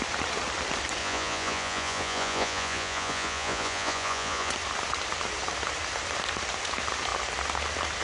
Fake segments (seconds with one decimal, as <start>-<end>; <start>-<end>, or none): 1.0-4.5